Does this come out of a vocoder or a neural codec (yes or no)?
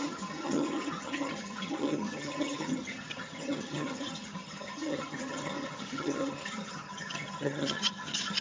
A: yes